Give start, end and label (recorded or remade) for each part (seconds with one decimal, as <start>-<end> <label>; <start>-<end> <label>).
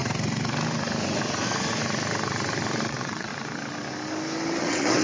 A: 0.0-2.9 recorded; 2.9-3.3 remade; 3.3-4.6 recorded; 4.6-5.0 remade